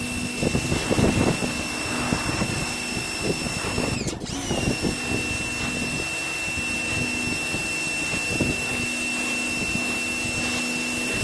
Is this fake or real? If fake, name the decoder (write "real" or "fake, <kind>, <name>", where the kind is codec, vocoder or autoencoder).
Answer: real